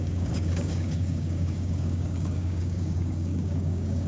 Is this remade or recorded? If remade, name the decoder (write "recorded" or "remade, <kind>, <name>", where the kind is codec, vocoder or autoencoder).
remade, codec, DAC